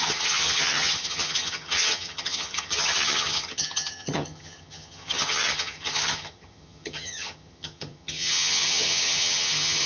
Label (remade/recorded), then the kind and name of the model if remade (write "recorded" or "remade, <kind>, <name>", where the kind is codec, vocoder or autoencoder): remade, vocoder, HiFi-GAN